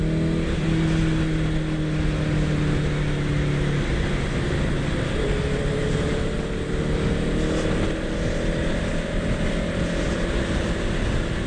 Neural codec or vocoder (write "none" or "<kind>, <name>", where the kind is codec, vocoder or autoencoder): none